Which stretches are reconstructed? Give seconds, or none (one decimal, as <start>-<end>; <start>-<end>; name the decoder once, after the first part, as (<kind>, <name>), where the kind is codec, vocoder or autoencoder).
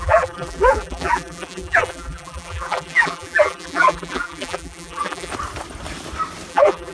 0.0-5.3 (vocoder, BigVGAN v2); 6.5-6.9